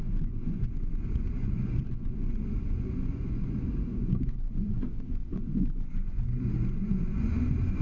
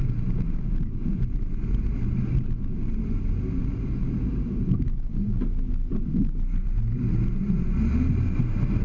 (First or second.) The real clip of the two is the second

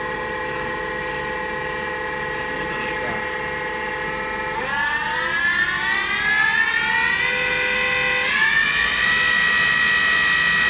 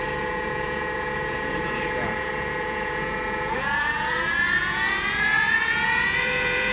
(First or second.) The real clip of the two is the first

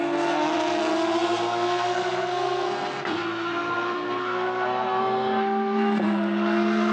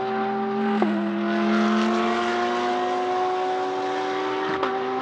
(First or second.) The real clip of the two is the second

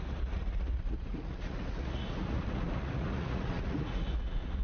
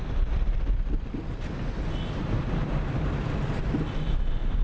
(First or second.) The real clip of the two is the second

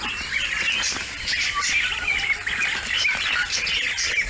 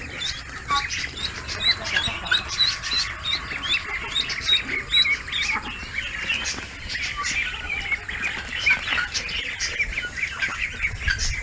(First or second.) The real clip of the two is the second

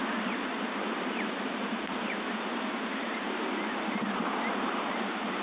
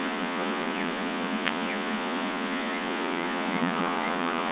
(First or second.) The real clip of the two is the first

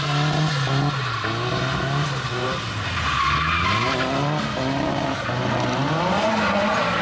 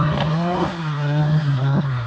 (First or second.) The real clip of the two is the first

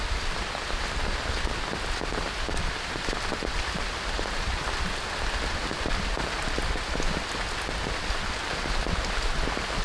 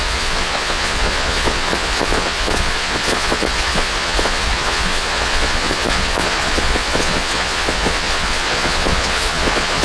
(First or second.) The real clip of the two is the first